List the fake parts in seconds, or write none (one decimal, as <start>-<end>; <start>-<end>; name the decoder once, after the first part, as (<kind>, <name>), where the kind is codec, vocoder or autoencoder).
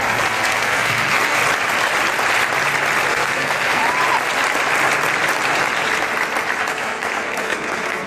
0.0-1.4 (codec, SNAC); 3.1-3.8; 6.6-8.1